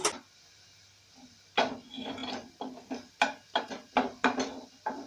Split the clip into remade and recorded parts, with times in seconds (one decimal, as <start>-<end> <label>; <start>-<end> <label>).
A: 0.0-5.1 recorded